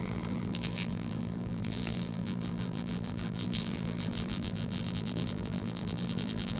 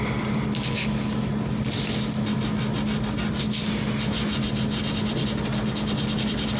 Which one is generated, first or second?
first